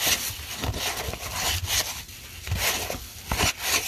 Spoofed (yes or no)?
no